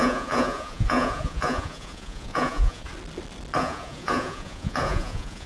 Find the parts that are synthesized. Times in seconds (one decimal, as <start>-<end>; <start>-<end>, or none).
0.0-2.9; 3.6-5.5